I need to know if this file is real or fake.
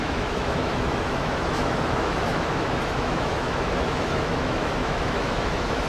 fake